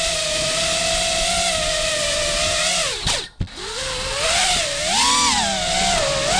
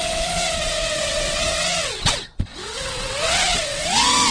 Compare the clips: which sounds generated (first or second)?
second